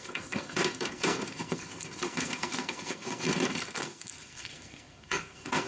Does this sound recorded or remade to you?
remade